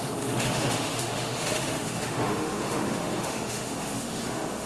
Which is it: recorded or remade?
remade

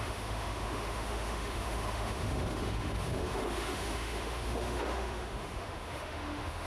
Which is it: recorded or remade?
remade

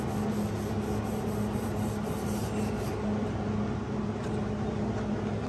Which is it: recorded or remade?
recorded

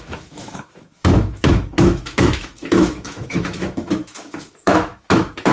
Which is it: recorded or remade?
remade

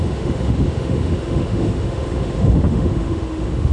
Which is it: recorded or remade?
remade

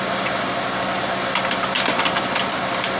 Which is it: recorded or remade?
recorded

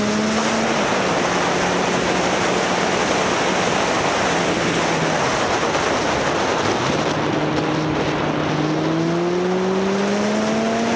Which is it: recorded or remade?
recorded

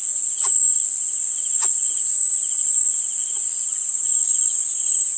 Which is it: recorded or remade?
recorded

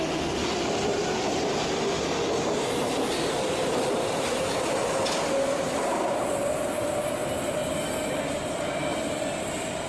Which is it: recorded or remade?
recorded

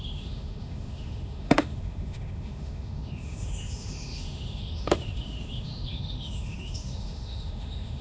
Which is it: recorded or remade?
remade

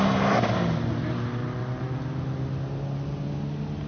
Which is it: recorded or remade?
recorded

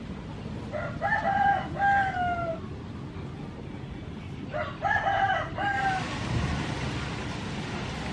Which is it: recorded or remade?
recorded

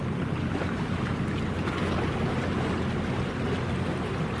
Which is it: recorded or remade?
recorded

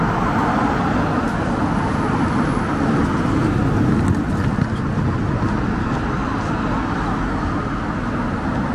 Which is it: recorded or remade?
recorded